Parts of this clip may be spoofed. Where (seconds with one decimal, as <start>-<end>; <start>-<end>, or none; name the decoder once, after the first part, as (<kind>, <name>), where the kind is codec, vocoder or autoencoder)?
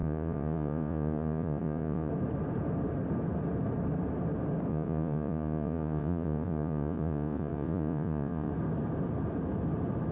0.0-2.1 (vocoder, Vocos); 4.7-8.5